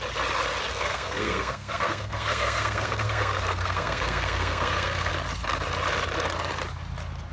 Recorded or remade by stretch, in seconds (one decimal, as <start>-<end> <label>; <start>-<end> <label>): 0.0-0.7 recorded; 0.7-5.1 remade; 5.1-7.3 recorded